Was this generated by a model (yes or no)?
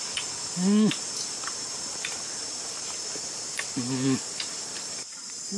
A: no